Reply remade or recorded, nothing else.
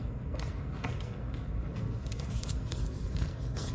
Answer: remade